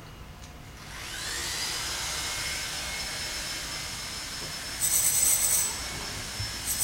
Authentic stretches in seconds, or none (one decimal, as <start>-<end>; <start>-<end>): 0.0-6.8